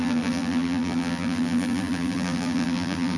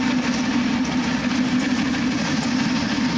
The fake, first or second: first